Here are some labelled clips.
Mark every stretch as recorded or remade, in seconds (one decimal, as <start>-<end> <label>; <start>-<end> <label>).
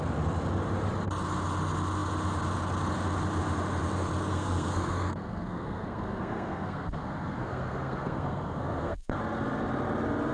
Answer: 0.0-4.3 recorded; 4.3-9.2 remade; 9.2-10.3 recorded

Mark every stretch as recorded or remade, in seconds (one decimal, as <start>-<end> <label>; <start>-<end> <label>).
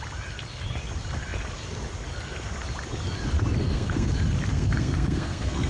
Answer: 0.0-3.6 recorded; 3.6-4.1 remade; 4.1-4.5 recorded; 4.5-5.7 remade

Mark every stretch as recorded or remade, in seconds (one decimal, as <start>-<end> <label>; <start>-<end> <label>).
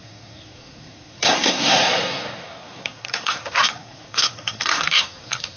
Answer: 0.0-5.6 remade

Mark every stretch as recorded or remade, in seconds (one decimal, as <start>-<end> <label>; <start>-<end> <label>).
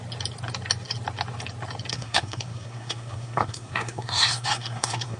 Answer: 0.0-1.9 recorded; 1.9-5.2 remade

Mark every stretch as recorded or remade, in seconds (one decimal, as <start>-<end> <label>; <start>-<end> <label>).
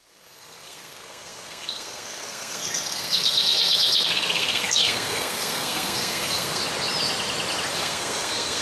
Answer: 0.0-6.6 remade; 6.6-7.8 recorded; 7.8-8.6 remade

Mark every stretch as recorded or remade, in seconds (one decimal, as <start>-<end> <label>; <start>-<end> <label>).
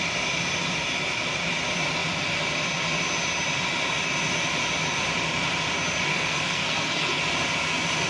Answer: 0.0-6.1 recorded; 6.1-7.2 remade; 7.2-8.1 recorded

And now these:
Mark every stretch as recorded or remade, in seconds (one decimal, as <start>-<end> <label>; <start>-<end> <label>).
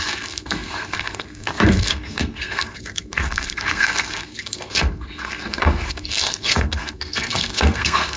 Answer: 0.0-8.2 remade